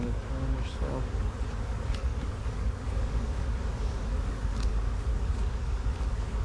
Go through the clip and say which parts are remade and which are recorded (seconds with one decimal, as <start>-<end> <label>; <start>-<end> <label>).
0.0-6.4 remade

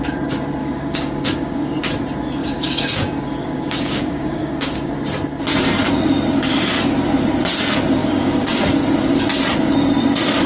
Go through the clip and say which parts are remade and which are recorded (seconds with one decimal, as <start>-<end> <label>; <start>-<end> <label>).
0.0-0.6 recorded; 0.6-1.8 remade; 1.8-2.4 recorded; 2.4-4.9 remade; 4.9-8.0 recorded; 8.0-8.6 remade; 8.6-10.5 recorded

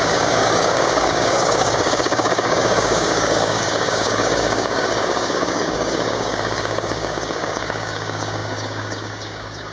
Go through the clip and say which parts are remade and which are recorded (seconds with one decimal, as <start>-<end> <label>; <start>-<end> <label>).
0.0-9.7 remade

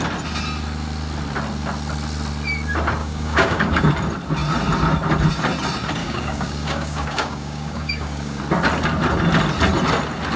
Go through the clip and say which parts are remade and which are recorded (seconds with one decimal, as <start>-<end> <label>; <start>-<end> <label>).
0.0-3.0 recorded; 3.0-3.9 remade; 3.9-6.0 recorded; 6.0-8.4 remade; 8.4-10.4 recorded